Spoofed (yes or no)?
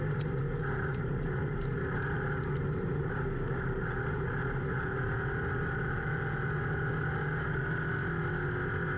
no